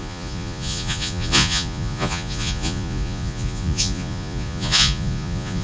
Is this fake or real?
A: fake